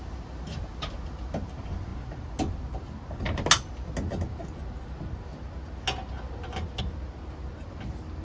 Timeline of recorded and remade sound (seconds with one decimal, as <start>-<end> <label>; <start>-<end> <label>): 0.0-8.2 recorded